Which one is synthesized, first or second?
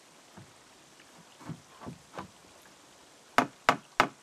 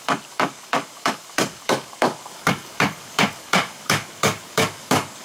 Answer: second